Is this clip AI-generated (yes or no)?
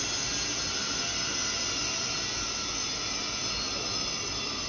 no